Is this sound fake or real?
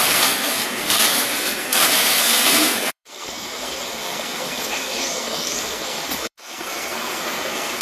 fake